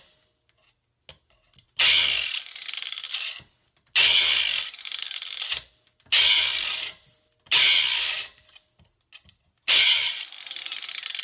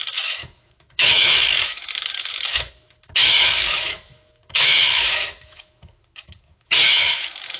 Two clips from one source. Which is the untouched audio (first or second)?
first